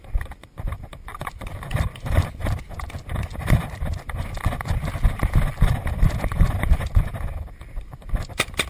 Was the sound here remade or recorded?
recorded